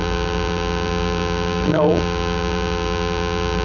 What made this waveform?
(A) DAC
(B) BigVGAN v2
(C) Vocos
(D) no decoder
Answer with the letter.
B